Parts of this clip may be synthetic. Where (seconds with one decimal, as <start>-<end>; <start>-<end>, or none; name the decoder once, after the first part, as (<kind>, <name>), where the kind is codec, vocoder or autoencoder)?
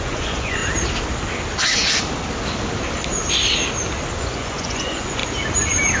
0.0-0.6 (vocoder, Vocos); 4.2-5.2